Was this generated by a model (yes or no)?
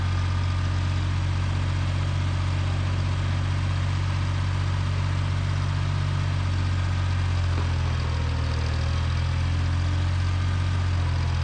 no